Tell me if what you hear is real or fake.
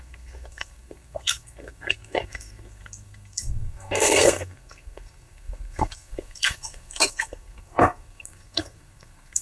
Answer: fake